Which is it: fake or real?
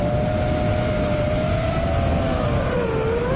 real